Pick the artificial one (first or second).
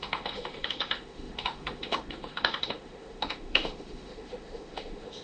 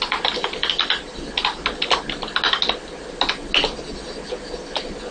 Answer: first